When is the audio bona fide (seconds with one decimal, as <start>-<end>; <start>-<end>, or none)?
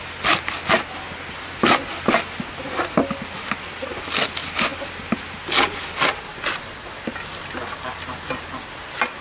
0.0-9.2